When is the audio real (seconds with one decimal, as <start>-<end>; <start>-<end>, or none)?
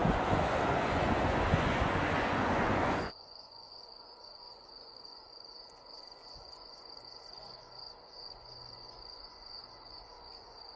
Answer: none